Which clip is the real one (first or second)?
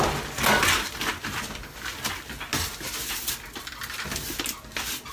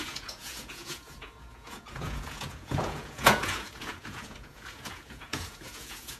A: first